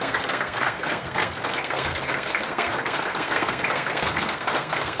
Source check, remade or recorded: remade